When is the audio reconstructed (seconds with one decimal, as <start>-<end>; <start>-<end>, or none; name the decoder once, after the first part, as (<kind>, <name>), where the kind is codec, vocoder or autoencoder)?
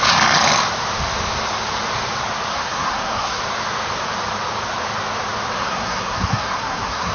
2.5-3.4 (codec, SNAC); 5.6-7.1